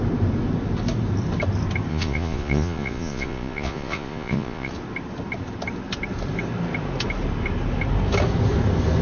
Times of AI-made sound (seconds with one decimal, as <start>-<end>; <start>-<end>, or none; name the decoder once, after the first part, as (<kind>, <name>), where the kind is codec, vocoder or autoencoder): 1.9-4.7 (vocoder, Vocos)